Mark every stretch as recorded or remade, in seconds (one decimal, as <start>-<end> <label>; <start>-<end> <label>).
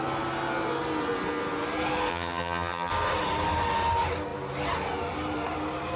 0.0-2.1 recorded; 2.1-2.9 remade; 2.9-6.0 recorded